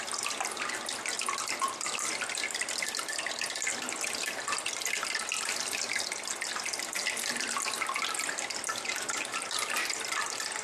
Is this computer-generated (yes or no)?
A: no